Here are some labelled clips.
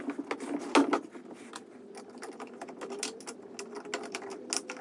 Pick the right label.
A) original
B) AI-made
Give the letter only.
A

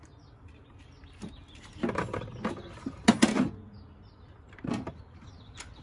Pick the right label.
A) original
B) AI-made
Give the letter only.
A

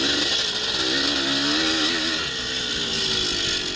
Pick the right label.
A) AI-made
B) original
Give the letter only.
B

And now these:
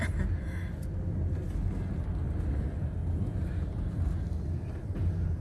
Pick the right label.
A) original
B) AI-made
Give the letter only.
A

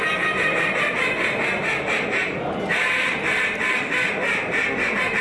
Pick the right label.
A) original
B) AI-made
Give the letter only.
A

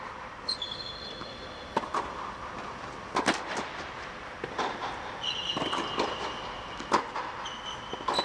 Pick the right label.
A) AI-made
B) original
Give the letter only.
B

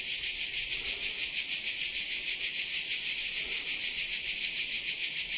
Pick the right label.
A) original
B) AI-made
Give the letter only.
A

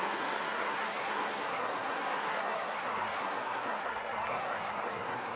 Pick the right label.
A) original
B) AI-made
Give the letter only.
B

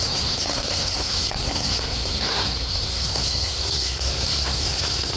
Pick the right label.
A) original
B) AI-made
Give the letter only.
B